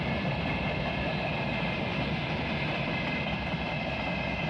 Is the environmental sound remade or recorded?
recorded